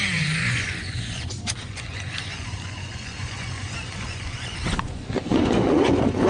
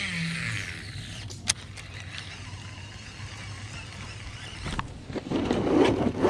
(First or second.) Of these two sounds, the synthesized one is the first